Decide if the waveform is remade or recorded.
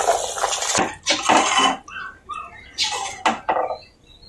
recorded